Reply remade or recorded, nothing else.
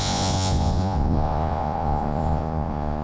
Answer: remade